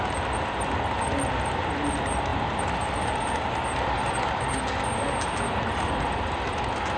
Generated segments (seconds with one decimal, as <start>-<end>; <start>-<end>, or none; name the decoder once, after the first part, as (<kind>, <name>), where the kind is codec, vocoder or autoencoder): none